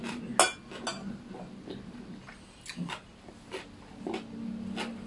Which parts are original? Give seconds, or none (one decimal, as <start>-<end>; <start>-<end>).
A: 0.0-5.1